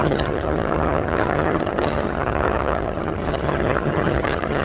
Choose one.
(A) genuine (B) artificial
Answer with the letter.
B